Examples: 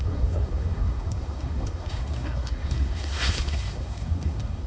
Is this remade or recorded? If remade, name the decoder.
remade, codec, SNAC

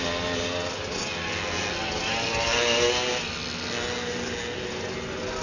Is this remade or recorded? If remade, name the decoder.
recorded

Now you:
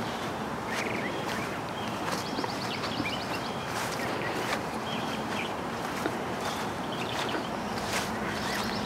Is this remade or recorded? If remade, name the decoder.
remade, vocoder, BigVGAN v2